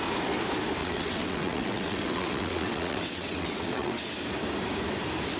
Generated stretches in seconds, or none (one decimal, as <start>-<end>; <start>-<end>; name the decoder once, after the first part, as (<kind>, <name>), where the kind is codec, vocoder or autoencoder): 0.8-4.0 (vocoder, WaveNeXt)